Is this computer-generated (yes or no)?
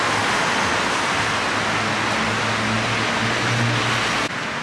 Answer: no